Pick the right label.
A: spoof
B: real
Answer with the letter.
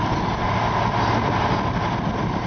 B